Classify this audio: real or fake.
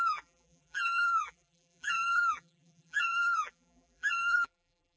fake